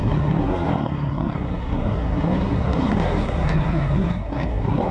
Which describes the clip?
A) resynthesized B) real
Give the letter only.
A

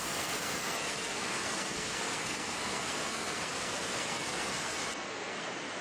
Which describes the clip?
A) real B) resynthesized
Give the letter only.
B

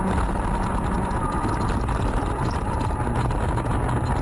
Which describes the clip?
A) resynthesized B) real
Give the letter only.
B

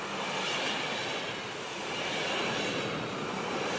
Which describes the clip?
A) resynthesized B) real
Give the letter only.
B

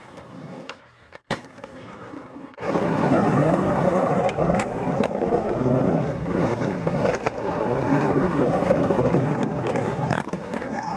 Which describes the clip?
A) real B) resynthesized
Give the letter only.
B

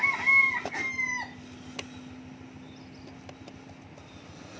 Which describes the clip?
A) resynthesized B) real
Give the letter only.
B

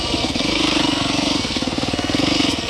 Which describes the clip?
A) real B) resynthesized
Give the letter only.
B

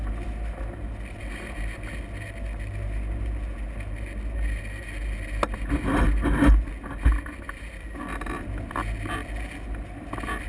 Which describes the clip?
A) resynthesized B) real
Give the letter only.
B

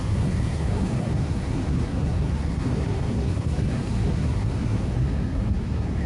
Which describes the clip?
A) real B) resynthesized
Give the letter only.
B